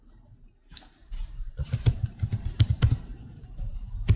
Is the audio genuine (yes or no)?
no